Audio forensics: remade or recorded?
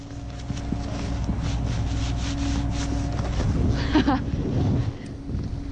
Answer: recorded